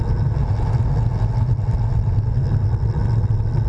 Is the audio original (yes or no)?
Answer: yes